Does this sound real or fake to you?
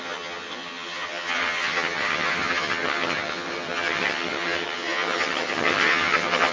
fake